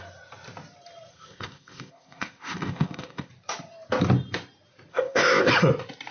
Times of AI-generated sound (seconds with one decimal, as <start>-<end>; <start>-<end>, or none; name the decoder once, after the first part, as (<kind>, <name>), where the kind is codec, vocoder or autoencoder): 1.1-3.3 (codec, ZipCodec); 4.9-5.5